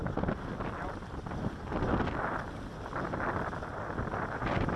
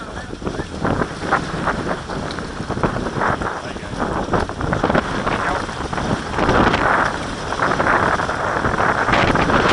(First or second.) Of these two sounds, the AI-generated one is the second